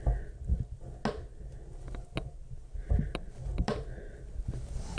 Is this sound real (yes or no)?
yes